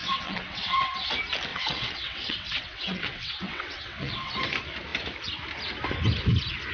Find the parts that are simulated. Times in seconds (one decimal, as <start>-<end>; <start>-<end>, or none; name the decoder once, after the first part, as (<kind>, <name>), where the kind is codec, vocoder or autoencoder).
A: 0.0-1.1 (vocoder, WaveNeXt); 1.5-4.3